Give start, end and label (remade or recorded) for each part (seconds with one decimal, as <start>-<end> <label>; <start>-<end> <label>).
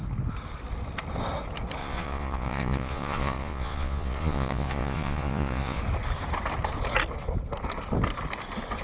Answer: 0.0-1.8 recorded; 1.8-5.8 remade; 5.8-8.8 recorded